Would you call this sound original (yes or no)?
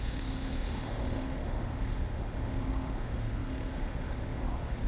no